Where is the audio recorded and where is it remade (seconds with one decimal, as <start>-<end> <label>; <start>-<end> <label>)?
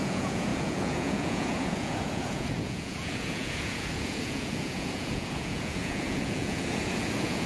0.0-7.5 remade